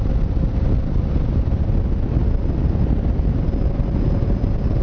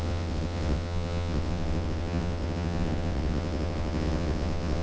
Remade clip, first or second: second